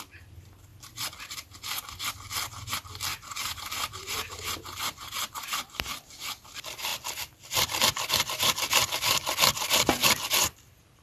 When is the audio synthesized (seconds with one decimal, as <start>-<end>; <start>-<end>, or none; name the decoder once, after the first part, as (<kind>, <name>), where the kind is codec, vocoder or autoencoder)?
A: 3.1-6.3 (vocoder, BigVGAN v2)